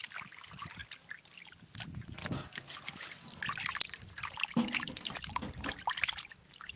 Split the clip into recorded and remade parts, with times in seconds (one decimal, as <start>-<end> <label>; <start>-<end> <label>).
0.0-6.8 recorded